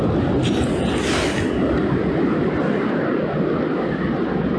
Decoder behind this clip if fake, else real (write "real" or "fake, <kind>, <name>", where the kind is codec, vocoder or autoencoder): real